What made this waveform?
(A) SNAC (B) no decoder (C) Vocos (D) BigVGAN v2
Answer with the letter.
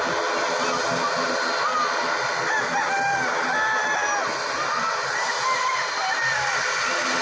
B